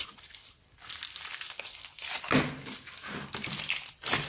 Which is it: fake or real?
real